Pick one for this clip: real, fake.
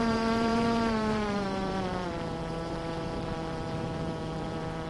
fake